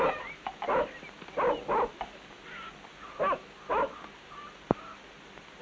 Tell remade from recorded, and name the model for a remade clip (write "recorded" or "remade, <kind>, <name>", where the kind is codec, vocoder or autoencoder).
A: recorded